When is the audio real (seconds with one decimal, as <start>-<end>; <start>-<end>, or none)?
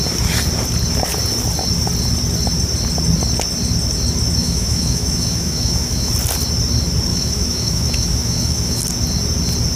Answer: 0.0-4.4; 6.1-7.1; 8.8-9.8